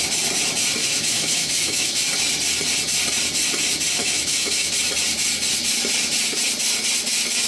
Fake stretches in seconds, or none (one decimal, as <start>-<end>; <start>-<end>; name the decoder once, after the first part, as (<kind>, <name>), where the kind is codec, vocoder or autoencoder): 0.8-2.0 (autoencoder, DAC-VAE); 4.0-4.7